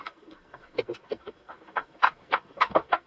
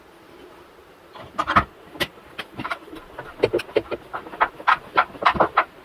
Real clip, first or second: second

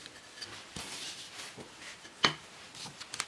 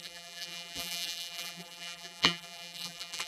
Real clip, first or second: first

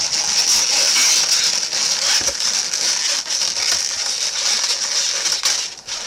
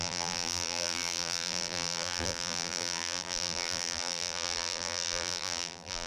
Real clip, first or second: first